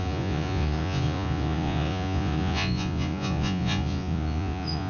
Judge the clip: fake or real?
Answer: fake